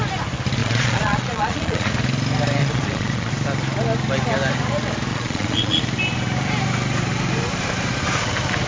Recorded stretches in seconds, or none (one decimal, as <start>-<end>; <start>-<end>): 0.0-0.6; 1.9-2.6; 3.3-5.1; 5.8-8.7